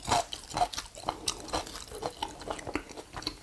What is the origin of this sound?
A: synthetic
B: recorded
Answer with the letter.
B